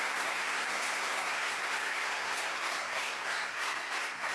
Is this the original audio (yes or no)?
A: no